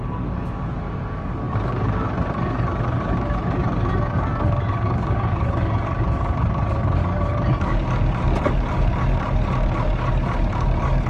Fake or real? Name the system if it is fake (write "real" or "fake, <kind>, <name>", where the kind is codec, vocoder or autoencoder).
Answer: fake, codec, DAC